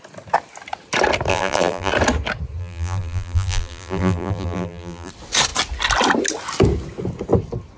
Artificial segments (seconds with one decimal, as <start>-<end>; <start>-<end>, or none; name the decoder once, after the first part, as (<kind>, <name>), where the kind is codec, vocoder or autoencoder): 1.3-1.9 (vocoder, BigVGAN v2); 2.6-5.1